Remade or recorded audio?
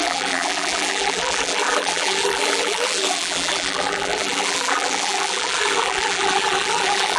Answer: remade